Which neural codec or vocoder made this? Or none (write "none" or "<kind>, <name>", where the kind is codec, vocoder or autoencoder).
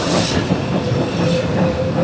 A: vocoder, BigVGAN v2